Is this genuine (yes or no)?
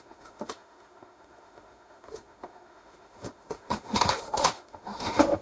no